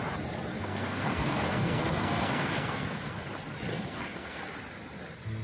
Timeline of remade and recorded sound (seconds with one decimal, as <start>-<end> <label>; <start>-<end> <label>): 0.0-0.5 recorded; 0.5-3.2 remade; 3.2-3.7 recorded; 3.7-4.4 remade; 4.4-5.4 recorded